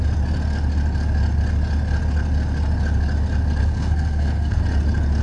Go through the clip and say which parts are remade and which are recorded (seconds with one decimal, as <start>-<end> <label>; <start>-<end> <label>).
0.0-3.6 recorded; 3.6-4.6 remade; 4.6-5.2 recorded